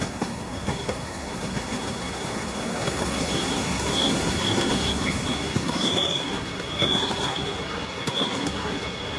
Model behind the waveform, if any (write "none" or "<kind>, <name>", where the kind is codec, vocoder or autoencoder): codec, SNAC